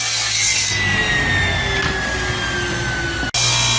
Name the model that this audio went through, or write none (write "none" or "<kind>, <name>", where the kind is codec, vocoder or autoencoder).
none